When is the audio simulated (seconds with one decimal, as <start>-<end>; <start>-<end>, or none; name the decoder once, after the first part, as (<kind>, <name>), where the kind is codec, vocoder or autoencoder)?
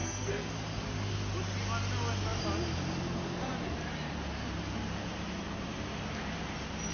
0.0-0.5 (codec, SNAC)